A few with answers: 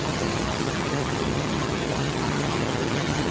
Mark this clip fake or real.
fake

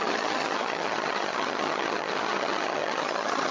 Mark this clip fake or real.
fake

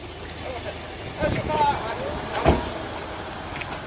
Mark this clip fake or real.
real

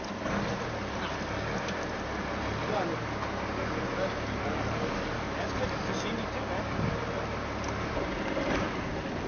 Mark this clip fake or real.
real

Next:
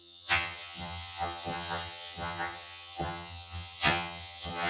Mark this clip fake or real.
fake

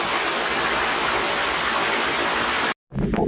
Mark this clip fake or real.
real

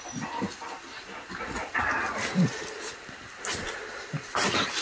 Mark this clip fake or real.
real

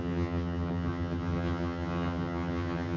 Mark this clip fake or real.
fake